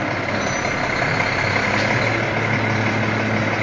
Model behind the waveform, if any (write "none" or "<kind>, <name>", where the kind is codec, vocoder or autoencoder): none